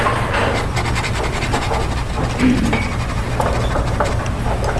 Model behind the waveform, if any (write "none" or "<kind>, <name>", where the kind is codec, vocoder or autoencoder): none